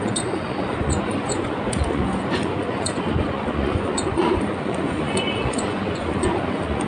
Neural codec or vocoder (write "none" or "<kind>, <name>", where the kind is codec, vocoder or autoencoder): vocoder, Vocos